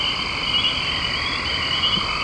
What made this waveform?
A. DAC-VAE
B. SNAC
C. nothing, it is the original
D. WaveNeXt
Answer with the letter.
C